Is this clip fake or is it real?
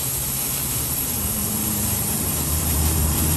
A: fake